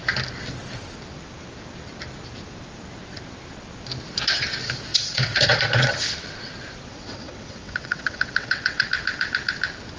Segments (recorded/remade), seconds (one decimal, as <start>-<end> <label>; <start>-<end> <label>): 0.0-4.9 recorded; 4.9-5.9 remade; 5.9-6.9 recorded; 6.9-8.9 remade; 8.9-10.0 recorded